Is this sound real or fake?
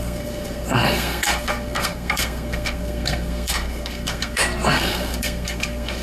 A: fake